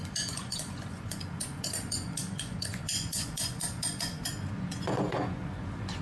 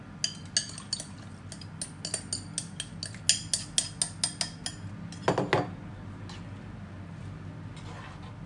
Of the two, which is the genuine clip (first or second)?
second